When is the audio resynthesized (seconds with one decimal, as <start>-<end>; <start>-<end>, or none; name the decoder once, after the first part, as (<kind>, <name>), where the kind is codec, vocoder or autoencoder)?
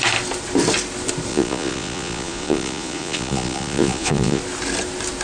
1.3-4.4 (vocoder, Vocos)